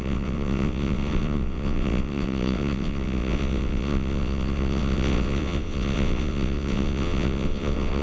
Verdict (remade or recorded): remade